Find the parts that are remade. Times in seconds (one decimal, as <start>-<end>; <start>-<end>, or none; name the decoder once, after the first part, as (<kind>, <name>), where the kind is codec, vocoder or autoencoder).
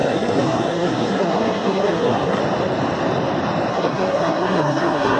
0.0-2.4 (codec, SNAC); 3.7-5.2